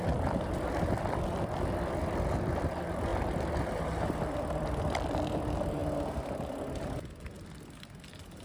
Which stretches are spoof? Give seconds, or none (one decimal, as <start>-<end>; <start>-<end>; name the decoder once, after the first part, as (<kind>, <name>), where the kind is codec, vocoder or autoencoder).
0.0-5.8 (vocoder, BigVGAN v2); 7.5-8.4